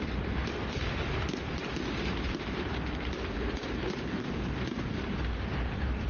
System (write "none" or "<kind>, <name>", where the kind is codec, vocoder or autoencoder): vocoder, BigVGAN v2